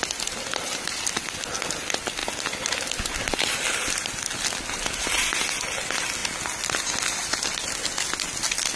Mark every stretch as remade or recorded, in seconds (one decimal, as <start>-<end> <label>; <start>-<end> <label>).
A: 0.0-8.8 recorded